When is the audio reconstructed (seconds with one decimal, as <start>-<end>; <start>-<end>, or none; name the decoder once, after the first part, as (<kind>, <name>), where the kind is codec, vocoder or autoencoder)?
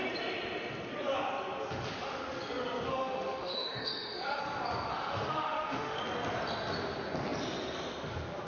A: 2.9-4.4 (autoencoder, DAC-VAE); 4.9-6.0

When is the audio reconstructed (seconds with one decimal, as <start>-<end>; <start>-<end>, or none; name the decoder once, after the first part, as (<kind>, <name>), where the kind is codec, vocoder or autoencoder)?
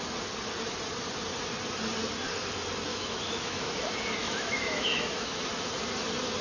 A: 2.9-3.8 (autoencoder, DAC-VAE); 4.2-5.4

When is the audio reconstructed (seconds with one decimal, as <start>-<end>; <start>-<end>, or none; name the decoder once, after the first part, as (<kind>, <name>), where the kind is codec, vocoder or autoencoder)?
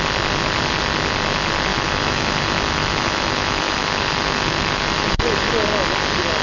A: 1.7-5.5 (autoencoder, DAC-VAE)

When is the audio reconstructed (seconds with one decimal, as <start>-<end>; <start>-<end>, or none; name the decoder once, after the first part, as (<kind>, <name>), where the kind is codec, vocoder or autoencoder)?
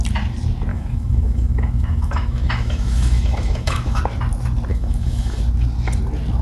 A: 0.7-4.0 (autoencoder, DAC-VAE); 4.7-5.4